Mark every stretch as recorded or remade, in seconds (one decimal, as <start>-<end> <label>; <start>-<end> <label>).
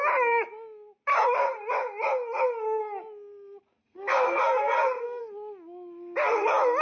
0.0-3.8 recorded; 3.8-5.2 remade; 5.2-6.8 recorded